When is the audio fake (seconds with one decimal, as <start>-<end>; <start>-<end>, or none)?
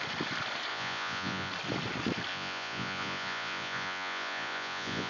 0.7-1.5; 2.3-5.1